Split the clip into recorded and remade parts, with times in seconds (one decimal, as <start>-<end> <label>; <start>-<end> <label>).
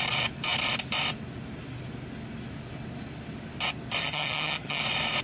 0.0-4.0 recorded; 4.0-4.8 remade; 4.8-5.2 recorded